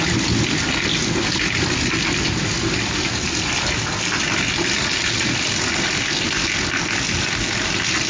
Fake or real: real